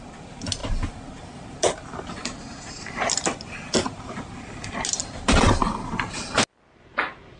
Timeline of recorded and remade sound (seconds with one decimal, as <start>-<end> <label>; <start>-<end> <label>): 0.0-7.4 recorded